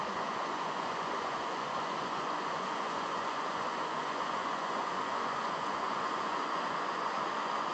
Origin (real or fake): fake